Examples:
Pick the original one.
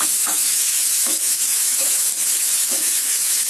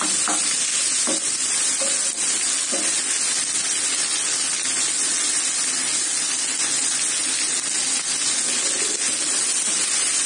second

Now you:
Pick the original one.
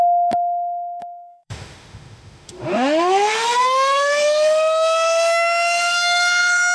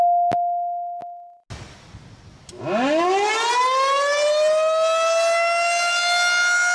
second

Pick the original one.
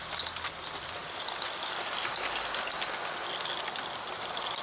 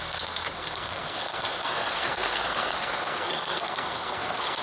first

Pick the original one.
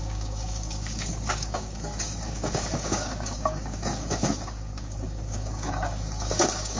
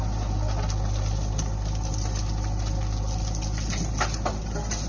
second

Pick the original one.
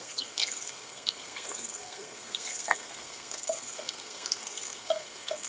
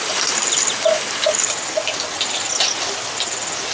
second